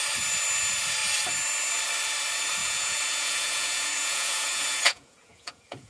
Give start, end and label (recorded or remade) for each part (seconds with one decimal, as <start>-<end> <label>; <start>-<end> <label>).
0.0-2.6 recorded; 2.6-5.9 remade